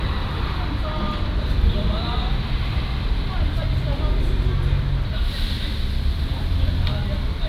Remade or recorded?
remade